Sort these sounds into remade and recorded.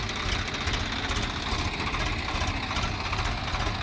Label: recorded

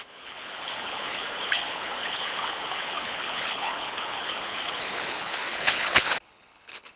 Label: remade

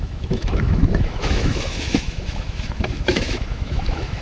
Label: remade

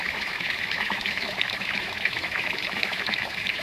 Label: remade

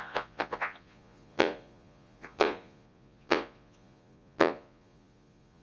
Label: remade